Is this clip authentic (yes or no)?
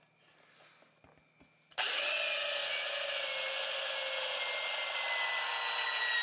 yes